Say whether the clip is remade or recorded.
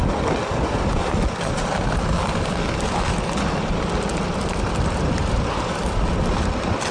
recorded